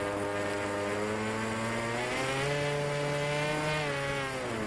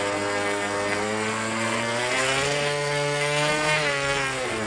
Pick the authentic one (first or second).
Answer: first